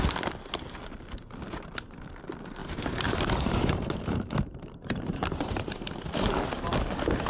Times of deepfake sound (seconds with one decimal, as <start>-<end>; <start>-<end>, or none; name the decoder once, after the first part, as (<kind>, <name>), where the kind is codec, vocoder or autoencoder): 2.6-6.0 (vocoder, BigVGAN v2)